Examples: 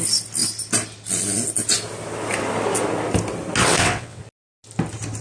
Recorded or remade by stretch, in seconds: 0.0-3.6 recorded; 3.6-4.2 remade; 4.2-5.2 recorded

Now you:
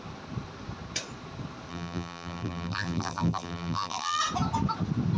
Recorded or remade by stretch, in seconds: 0.0-1.7 recorded; 1.7-4.2 remade; 4.2-5.2 recorded

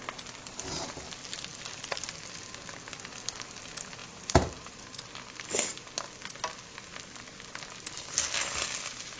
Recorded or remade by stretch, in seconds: 0.0-4.0 recorded; 4.0-5.0 remade; 5.0-9.2 recorded